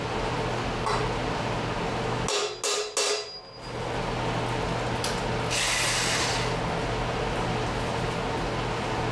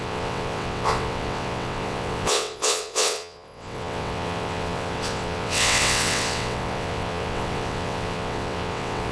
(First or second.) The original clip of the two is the first